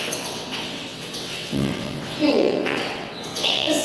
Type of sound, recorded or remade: remade